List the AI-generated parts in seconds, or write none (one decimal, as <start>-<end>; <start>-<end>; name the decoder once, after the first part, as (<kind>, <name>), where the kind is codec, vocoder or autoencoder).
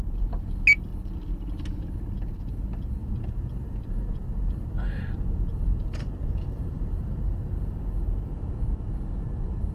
3.0-7.5 (vocoder, BigVGAN v2)